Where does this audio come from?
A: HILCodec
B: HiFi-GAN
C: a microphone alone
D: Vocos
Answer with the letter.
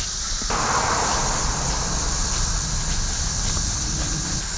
C